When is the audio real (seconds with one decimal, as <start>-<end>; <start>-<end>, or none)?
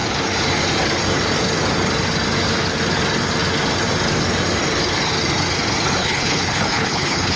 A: 0.0-6.0